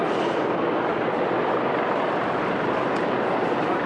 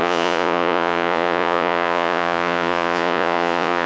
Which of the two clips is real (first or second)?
first